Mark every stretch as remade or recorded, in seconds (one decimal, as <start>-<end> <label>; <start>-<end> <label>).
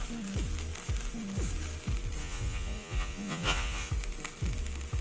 0.0-2.2 recorded; 2.2-3.9 remade; 3.9-5.0 recorded